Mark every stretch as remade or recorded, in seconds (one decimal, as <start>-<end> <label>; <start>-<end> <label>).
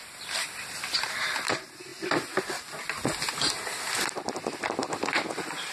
0.0-1.9 remade; 1.9-5.3 recorded; 5.3-5.7 remade